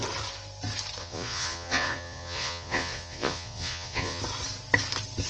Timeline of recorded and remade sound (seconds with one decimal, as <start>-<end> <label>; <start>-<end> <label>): 0.0-1.0 recorded; 1.0-4.2 remade; 4.2-5.3 recorded